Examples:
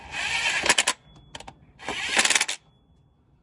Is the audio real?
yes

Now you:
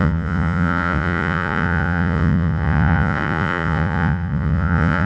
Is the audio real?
no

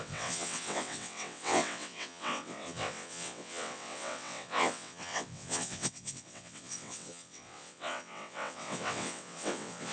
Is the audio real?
no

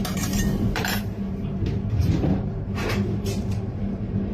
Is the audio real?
no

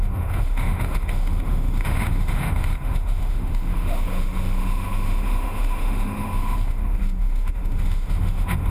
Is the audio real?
no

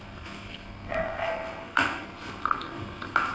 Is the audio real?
no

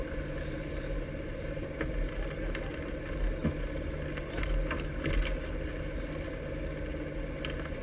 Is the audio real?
yes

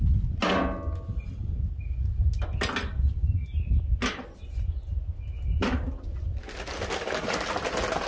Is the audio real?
yes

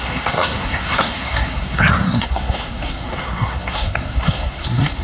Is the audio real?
no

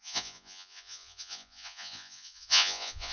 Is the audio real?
no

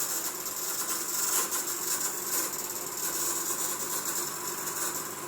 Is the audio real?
yes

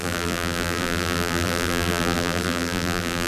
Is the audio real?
no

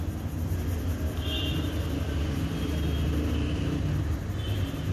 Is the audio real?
yes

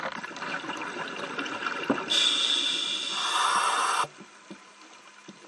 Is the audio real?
yes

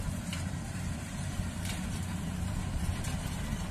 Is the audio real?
no